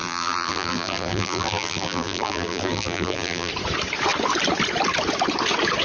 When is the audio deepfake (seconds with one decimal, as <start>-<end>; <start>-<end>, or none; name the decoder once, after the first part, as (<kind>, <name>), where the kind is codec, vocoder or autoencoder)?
0.0-3.5 (vocoder, BigVGAN v2)

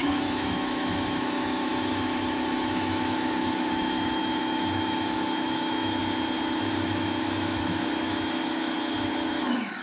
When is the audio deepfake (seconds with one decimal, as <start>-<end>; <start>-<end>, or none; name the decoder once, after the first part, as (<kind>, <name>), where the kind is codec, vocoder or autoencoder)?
0.0-6.0 (autoencoder, DAC-VAE); 6.6-9.8

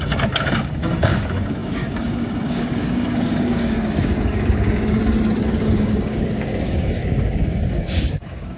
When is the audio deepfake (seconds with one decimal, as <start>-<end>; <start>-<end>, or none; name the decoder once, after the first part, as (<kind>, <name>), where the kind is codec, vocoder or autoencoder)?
0.0-5.0 (codec, DAC); 5.6-8.6